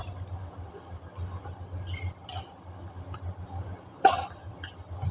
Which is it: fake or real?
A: real